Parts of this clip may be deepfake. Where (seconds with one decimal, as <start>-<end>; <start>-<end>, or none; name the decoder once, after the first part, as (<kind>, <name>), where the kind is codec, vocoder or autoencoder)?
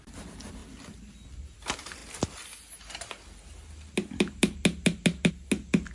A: none